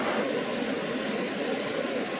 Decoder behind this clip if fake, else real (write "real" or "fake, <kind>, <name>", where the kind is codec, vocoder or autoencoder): real